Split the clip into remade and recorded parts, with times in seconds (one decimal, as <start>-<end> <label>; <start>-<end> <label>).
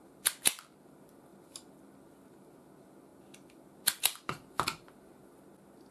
0.0-5.9 recorded